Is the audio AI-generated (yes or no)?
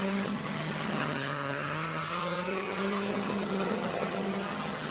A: yes